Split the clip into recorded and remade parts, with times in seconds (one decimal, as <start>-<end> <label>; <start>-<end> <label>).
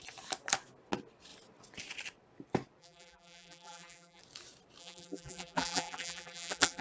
0.0-2.8 recorded; 2.8-4.2 remade; 4.2-4.8 recorded; 4.8-6.8 remade